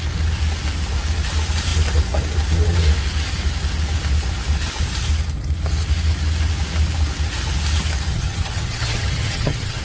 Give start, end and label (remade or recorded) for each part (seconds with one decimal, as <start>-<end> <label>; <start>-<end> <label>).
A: 0.0-8.1 recorded; 8.1-9.8 remade